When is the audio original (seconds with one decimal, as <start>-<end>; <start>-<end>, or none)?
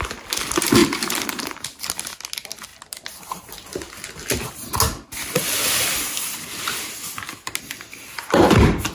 0.0-0.8; 1.8-8.9